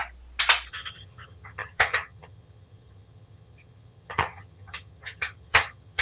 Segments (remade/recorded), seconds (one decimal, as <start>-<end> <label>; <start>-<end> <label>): 0.0-0.7 recorded; 0.7-6.0 remade